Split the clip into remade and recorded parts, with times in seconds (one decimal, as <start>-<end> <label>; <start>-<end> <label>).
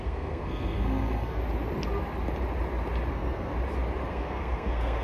0.0-1.4 remade; 1.4-3.1 recorded; 3.1-3.5 remade; 3.5-4.1 recorded; 4.1-5.0 remade